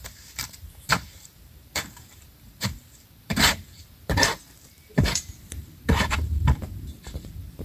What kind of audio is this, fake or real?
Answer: fake